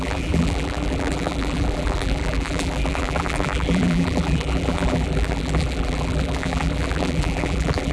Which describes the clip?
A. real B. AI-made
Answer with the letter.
B